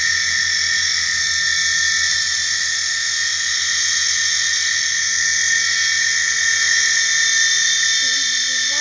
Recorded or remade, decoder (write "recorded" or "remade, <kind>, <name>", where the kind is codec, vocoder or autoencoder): recorded